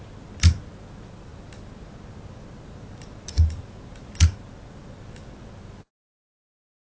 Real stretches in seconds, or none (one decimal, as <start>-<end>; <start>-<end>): 0.0-6.9